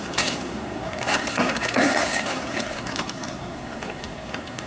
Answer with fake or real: fake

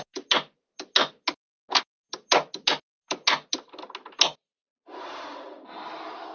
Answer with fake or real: real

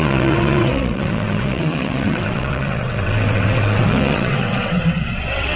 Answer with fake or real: fake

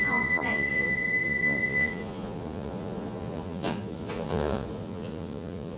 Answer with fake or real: fake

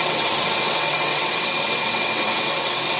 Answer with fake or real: fake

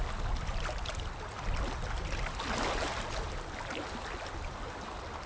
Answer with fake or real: real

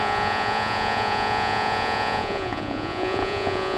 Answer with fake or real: fake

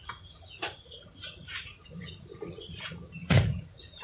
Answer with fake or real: fake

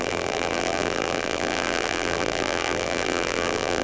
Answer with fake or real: fake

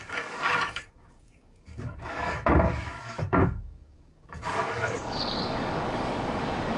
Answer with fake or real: fake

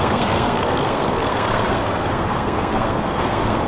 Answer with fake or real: fake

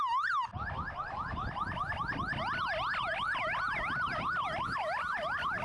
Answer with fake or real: real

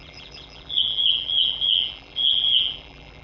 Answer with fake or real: fake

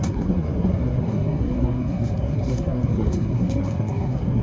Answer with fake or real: fake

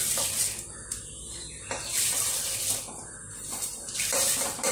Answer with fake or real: real